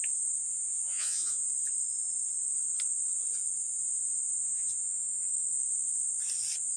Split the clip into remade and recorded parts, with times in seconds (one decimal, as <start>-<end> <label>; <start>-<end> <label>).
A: 0.0-0.4 recorded; 0.4-1.5 remade; 1.5-4.4 recorded; 4.4-5.3 remade; 5.3-6.8 recorded